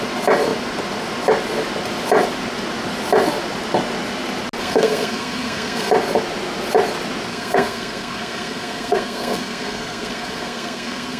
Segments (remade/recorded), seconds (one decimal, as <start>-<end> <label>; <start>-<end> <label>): 0.0-4.6 recorded; 4.6-5.9 remade; 5.9-7.3 recorded; 7.3-11.2 remade